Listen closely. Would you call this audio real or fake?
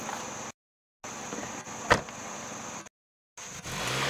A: real